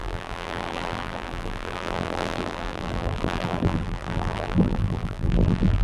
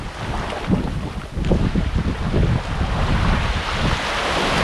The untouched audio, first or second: second